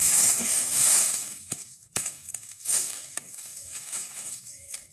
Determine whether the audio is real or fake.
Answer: fake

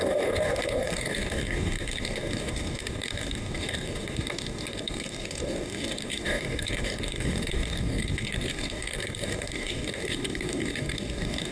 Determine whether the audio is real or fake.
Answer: fake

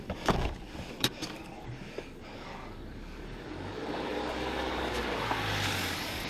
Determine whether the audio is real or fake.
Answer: fake